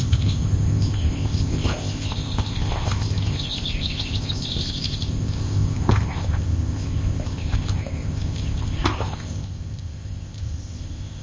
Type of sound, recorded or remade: remade